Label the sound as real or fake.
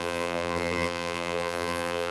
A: fake